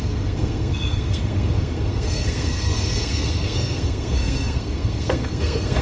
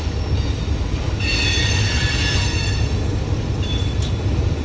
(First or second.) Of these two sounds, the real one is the second